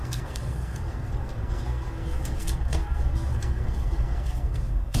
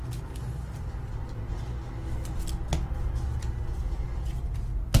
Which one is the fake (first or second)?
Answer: first